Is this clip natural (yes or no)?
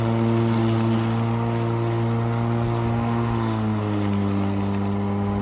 yes